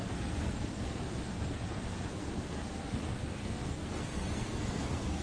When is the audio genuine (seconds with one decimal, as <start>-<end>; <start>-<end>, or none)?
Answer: none